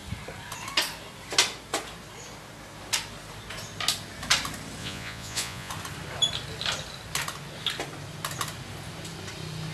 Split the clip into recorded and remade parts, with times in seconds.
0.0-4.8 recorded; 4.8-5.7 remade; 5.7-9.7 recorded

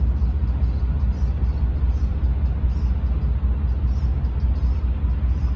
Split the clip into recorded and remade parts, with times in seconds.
0.0-5.6 recorded

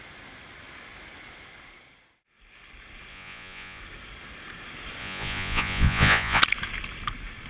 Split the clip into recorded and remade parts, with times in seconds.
0.0-3.1 recorded; 3.1-3.8 remade; 3.8-5.0 recorded; 5.0-6.4 remade; 6.4-7.5 recorded

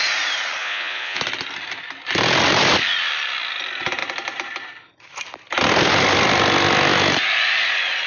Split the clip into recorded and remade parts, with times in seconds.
0.0-0.6 recorded; 0.6-1.2 remade; 1.2-8.1 recorded

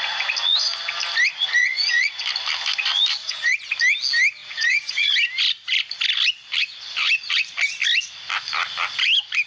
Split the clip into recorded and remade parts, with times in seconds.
0.0-1.6 recorded; 1.6-2.2 remade; 2.2-3.2 recorded; 3.2-3.7 remade; 3.7-4.4 recorded; 4.4-5.1 remade; 5.1-9.5 recorded

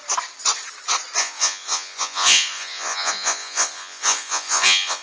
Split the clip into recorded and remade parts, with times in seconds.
0.0-1.2 recorded; 1.2-5.0 remade

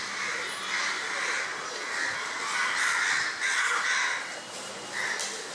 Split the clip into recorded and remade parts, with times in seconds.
0.0-5.5 recorded